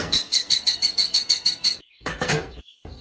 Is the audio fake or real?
fake